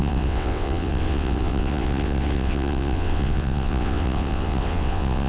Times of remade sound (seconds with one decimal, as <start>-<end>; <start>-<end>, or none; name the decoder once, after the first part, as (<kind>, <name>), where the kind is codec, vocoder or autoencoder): 0.0-5.3 (vocoder, WaveNeXt)